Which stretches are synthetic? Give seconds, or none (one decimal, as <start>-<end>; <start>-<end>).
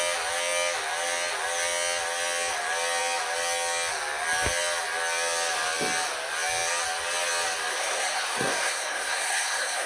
7.7-9.9